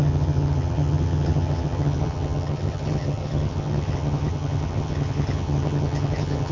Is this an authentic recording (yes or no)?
no